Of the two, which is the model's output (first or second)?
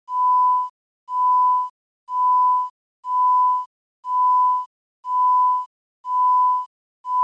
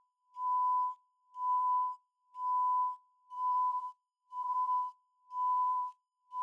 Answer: second